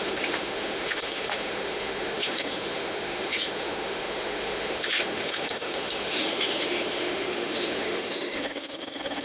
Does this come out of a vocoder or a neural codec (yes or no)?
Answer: yes